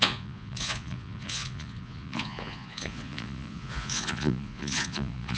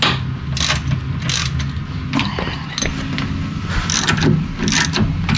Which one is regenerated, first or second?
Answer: first